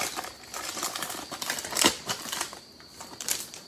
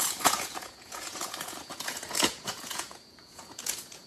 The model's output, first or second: second